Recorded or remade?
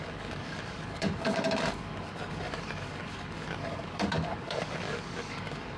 remade